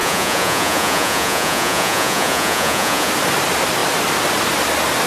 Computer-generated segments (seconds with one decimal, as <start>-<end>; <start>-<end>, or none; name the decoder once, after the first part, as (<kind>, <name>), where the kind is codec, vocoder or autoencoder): 0.0-3.1 (vocoder, Vocos)